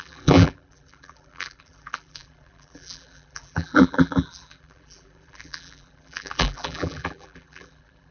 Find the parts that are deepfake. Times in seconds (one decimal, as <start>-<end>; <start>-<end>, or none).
0.0-8.1

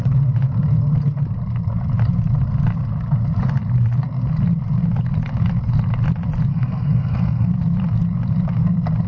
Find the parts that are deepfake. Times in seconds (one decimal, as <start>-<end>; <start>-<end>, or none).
6.5-7.5

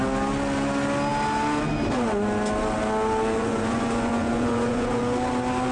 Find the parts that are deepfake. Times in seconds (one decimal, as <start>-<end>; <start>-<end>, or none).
3.4-5.0

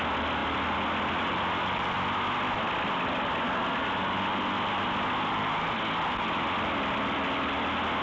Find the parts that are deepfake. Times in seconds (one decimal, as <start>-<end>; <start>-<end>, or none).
none

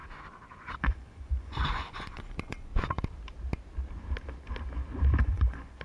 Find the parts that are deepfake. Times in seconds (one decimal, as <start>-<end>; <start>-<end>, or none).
0.8-2.7; 5.2-5.8